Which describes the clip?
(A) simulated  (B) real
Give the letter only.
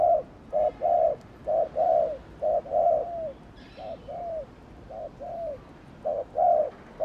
A